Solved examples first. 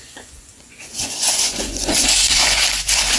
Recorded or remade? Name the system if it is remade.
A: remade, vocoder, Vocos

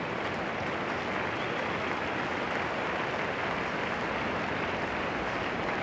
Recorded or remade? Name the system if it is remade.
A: recorded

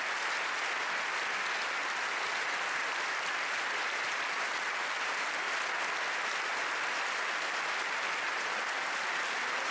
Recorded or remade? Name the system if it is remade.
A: recorded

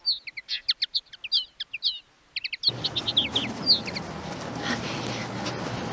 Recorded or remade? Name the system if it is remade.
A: recorded